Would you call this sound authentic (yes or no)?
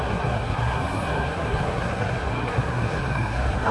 no